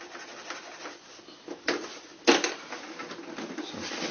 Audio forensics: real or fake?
real